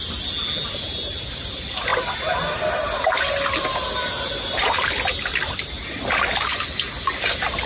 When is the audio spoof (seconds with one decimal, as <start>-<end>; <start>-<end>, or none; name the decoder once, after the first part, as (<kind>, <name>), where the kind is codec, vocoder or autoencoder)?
none